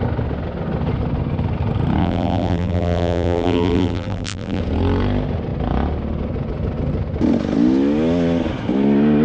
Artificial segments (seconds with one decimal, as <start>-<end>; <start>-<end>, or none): 2.0-4.6